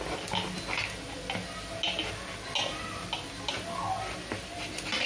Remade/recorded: recorded